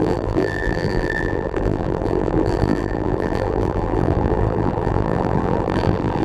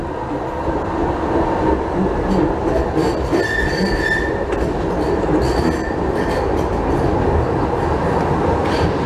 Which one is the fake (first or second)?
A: first